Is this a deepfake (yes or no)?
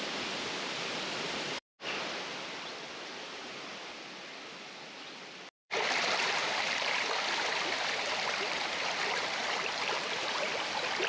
yes